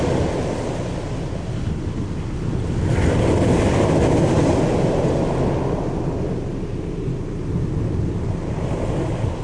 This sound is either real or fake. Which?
real